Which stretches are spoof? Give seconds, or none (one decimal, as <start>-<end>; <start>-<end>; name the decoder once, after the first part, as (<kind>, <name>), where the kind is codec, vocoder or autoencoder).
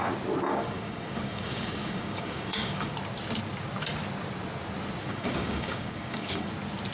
0.5-2.9 (codec, DAC); 5.1-6.5